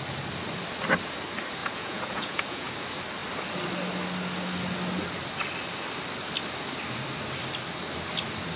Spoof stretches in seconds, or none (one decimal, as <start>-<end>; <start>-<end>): 1.6-2.7

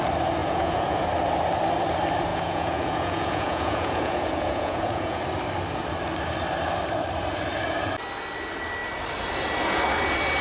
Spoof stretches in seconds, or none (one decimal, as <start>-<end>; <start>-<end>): 0.4-1.1; 2.3-5.2

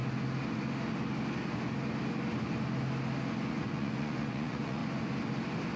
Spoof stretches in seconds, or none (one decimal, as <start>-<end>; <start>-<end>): 3.5-4.8

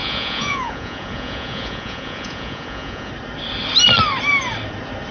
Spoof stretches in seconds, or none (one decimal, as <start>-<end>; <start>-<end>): 0.0-3.1

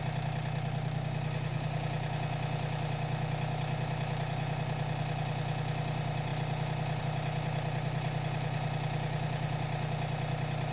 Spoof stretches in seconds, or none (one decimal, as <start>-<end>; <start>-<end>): none

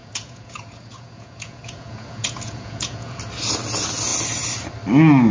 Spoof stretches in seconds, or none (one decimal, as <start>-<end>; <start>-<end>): 0.0-3.2